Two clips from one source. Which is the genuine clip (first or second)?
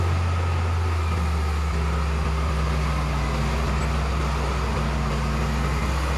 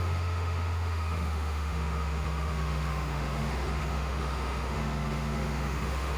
first